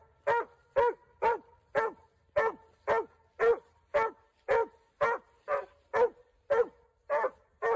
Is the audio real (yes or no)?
yes